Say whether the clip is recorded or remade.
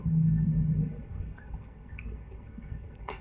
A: remade